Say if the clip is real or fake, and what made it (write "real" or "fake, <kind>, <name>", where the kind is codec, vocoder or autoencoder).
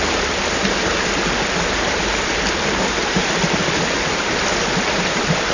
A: real